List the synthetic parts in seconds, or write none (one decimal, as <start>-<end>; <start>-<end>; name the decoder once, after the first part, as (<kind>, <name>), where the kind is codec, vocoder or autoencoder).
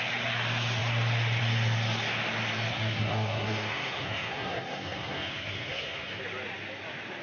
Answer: 2.7-6.2 (codec, SNAC)